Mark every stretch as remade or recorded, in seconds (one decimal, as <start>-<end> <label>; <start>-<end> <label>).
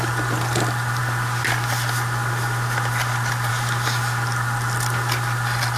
0.0-5.8 recorded